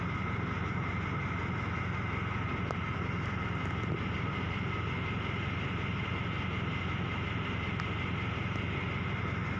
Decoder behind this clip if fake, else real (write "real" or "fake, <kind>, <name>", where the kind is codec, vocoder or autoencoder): real